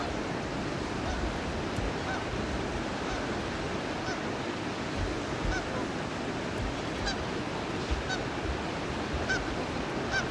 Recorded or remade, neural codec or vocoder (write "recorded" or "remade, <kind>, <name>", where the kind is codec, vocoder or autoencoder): recorded